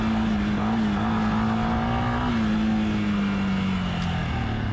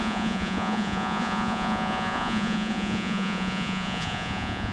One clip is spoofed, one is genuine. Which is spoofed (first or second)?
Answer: second